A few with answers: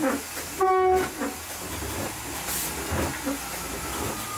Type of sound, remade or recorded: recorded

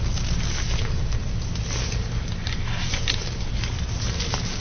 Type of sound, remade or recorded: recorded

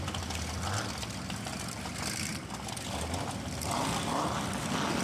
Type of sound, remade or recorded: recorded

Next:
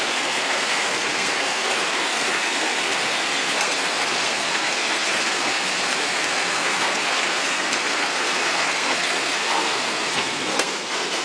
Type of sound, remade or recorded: remade